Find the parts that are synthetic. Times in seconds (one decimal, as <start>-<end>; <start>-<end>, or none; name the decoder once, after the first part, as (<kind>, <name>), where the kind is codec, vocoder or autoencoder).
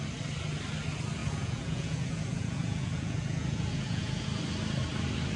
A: 1.2-4.4 (vocoder, Vocos)